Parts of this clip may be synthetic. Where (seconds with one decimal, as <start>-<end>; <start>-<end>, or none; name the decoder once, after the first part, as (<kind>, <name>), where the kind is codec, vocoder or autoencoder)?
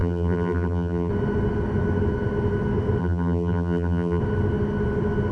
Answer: 0.0-1.1 (vocoder, BigVGAN v2); 3.0-4.2